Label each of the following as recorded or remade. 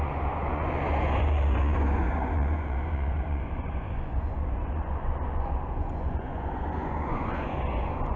remade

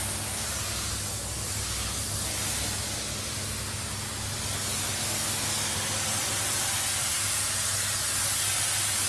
recorded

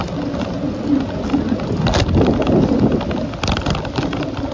recorded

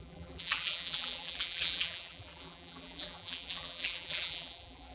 remade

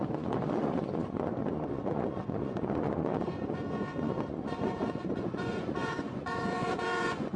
remade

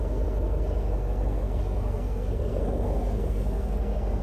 remade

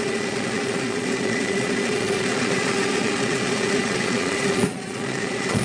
remade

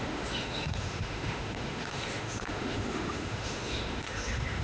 remade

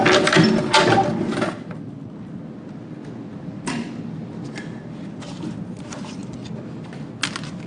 recorded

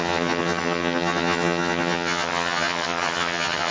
remade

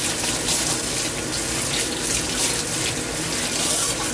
recorded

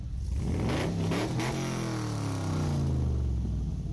recorded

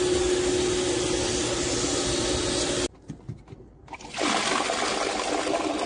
recorded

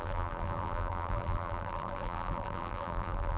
remade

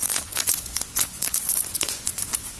remade